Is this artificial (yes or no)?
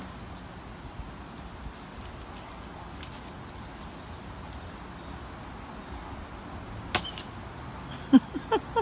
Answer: no